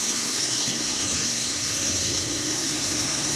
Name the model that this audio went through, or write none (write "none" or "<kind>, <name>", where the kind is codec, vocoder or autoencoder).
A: codec, SNAC